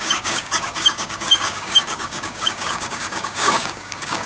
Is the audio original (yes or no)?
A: no